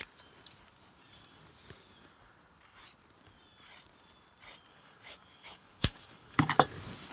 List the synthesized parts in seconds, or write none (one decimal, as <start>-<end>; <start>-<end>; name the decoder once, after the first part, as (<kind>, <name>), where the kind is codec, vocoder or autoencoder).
4.7-6.5 (codec, DAC)